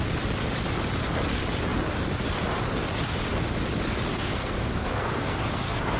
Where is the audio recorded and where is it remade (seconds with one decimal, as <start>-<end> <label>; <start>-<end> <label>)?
0.0-4.1 recorded; 4.1-6.0 remade